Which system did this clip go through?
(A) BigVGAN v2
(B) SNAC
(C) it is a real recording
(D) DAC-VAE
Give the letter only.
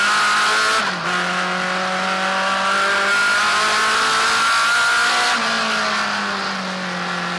C